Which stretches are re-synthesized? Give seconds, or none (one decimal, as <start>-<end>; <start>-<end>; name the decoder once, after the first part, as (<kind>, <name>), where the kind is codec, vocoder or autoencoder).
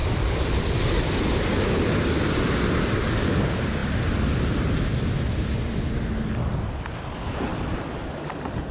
0.0-3.1 (vocoder, BigVGAN v2); 3.8-5.7